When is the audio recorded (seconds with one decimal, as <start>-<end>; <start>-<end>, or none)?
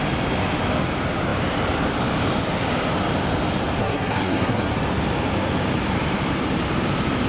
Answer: 0.0-3.8; 4.7-7.3